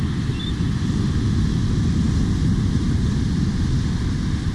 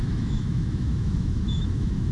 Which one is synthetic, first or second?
second